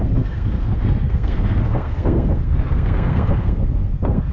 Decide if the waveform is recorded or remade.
remade